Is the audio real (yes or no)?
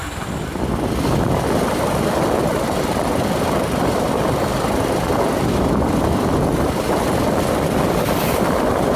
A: yes